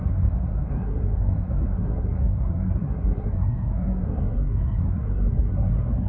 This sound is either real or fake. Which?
fake